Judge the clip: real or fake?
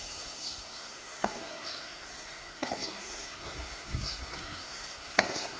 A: fake